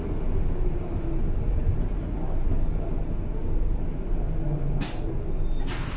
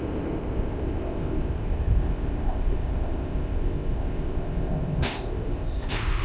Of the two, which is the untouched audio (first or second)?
first